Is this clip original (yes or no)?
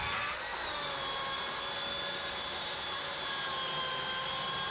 yes